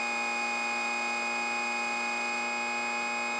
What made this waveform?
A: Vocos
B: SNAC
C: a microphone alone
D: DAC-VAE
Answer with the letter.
C